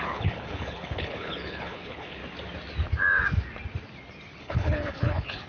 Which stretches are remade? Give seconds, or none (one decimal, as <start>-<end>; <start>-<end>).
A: 0.0-2.2; 4.4-5.5